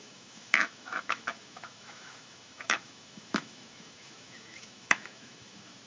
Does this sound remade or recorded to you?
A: remade